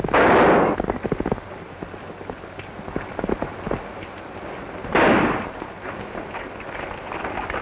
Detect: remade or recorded recorded